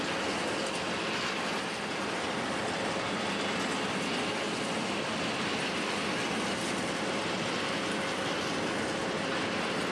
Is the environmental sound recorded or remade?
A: recorded